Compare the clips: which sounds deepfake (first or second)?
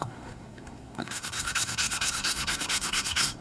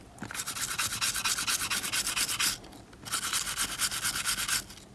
first